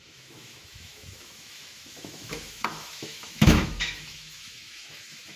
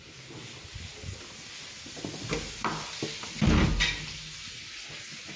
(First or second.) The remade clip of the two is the first